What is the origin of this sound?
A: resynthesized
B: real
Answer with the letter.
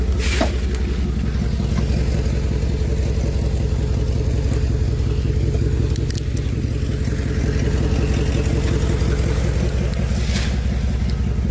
B